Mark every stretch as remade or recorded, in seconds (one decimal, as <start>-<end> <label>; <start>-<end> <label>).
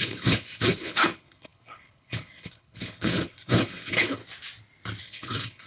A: 0.0-4.2 remade; 4.2-5.0 recorded; 5.0-5.7 remade